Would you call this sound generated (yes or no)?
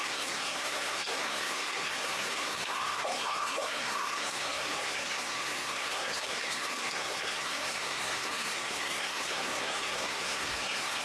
yes